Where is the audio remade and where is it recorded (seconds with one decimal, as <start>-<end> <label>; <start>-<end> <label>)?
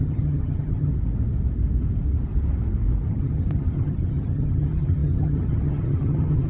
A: 0.0-0.9 remade; 0.9-3.1 recorded; 3.1-6.5 remade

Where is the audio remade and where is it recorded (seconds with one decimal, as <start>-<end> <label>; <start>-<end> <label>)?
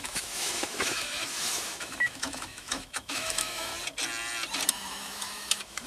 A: 0.0-3.7 remade; 3.7-4.7 recorded; 4.7-5.9 remade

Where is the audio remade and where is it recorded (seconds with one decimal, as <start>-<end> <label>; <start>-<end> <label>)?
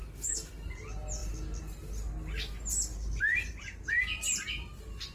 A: 0.0-0.7 remade; 0.7-5.1 recorded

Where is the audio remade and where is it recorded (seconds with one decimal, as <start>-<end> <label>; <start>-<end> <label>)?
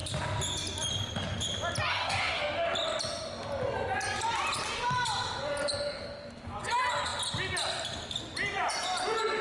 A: 0.0-1.9 recorded; 1.9-2.4 remade; 2.4-9.4 recorded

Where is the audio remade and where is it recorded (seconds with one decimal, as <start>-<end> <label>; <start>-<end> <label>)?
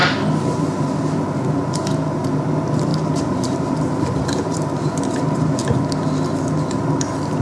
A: 0.0-2.9 recorded; 2.9-4.9 remade; 4.9-7.4 recorded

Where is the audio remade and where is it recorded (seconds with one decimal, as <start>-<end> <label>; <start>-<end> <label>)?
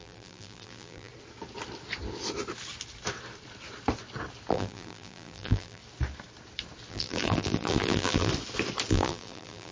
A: 0.0-1.1 remade; 1.1-4.5 recorded; 4.5-5.8 remade; 5.8-6.9 recorded; 6.9-8.3 remade; 8.3-8.9 recorded; 8.9-9.7 remade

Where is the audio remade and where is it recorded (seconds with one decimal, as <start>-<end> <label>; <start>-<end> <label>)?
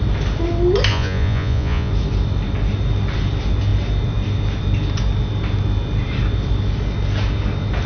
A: 0.0-0.9 recorded; 0.9-1.9 remade; 1.9-7.9 recorded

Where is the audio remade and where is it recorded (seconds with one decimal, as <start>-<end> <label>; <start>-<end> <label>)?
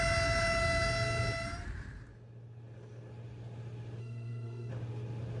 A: 0.0-4.0 recorded; 4.0-4.7 remade; 4.7-5.4 recorded